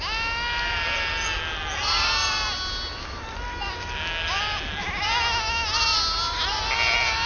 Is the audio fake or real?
real